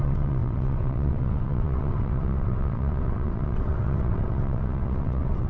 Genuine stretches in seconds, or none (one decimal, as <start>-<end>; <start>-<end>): none